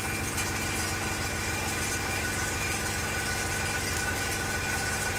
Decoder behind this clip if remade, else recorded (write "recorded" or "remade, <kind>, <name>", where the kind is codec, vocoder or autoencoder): recorded